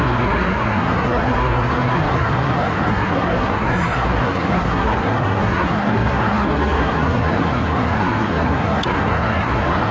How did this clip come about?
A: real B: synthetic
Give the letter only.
B